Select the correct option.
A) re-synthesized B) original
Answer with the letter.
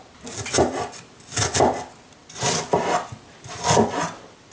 B